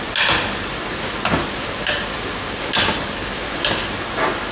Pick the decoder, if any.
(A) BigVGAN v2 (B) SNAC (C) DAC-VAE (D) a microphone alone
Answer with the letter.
D